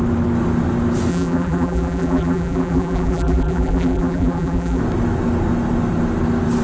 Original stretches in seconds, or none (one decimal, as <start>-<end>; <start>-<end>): 0.0-1.1; 4.8-6.6